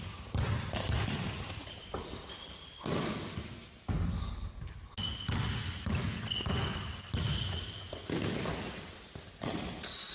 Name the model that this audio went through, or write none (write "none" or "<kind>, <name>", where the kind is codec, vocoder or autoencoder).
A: none